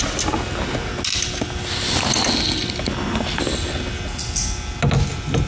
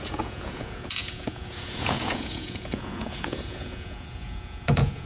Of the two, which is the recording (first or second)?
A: first